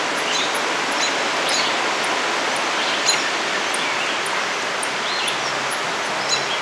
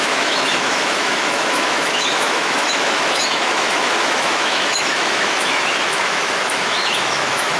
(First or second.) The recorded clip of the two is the first